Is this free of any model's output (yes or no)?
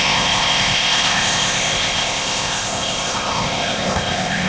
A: no